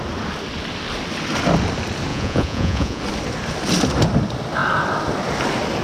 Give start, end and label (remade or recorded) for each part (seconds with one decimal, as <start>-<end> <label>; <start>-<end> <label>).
0.0-2.1 recorded; 2.1-3.0 remade; 3.0-5.8 recorded